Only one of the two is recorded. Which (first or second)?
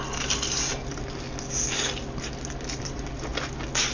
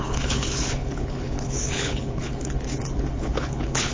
first